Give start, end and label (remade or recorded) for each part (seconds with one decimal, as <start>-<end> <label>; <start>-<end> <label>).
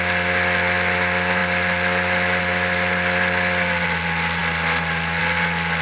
0.0-5.8 recorded